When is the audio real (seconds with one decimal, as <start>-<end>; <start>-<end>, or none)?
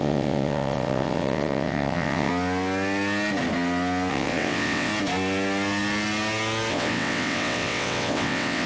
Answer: 2.3-4.1; 4.9-6.7